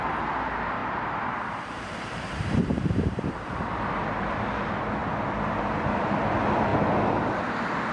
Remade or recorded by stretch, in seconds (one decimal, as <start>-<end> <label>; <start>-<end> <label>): 0.0-0.8 recorded; 0.8-4.3 remade; 4.3-7.9 recorded